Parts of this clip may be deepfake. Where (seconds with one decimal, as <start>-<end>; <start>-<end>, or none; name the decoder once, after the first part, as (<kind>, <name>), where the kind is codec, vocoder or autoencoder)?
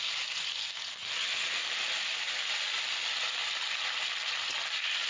none